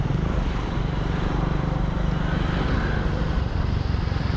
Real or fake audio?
real